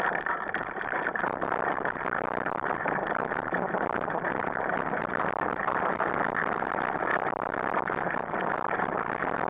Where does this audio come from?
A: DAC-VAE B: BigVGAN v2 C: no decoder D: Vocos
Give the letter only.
C